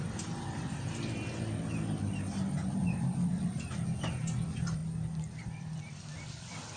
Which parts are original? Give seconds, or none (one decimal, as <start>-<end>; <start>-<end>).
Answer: 4.8-5.4; 6.1-6.8